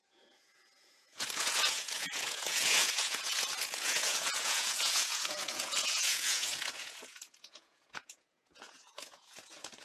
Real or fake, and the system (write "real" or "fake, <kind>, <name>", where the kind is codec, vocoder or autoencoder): fake, vocoder, Vocos